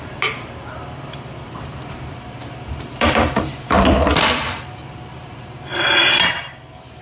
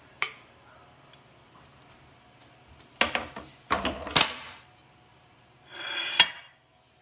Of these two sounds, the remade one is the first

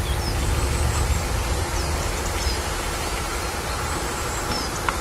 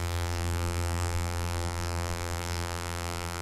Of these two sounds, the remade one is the second